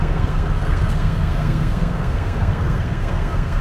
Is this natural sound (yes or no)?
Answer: no